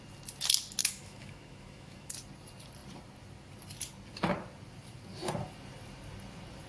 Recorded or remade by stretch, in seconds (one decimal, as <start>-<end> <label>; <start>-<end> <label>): 0.0-0.8 recorded; 0.8-2.1 remade; 2.1-6.7 recorded